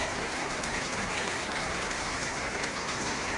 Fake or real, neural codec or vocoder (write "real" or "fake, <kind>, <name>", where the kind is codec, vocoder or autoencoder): fake, codec, SNAC